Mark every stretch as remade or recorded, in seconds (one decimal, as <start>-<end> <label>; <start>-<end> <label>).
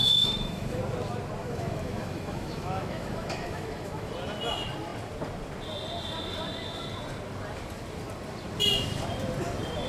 0.0-0.8 remade; 0.8-1.4 recorded; 1.4-4.1 remade; 4.1-9.9 recorded